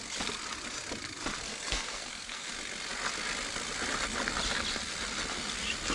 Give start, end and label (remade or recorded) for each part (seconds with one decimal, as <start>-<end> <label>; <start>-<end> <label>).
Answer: 0.0-1.5 recorded; 1.5-2.5 remade; 2.5-5.9 recorded